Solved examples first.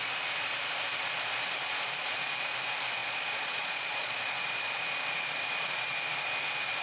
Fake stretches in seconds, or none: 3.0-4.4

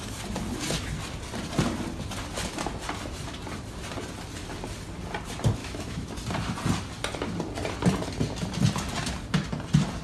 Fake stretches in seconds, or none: 5.6-6.1

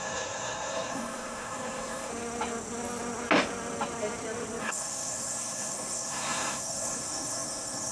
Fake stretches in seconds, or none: 0.0-2.1; 4.6-7.9

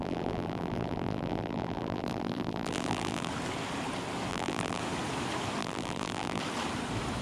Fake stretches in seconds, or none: 0.0-3.3; 4.3-4.8; 5.6-6.4